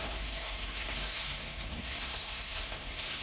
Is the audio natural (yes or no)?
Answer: no